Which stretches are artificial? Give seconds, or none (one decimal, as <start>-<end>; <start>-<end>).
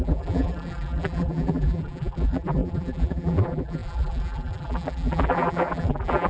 0.0-6.3